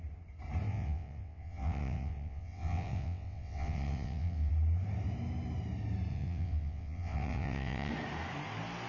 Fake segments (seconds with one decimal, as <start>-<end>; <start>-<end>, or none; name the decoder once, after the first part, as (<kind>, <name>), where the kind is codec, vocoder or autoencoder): 0.7-4.5 (vocoder, WaveNeXt); 6.1-7.9